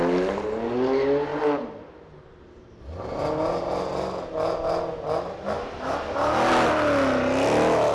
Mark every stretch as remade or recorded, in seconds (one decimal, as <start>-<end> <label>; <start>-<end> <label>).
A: 0.0-7.9 recorded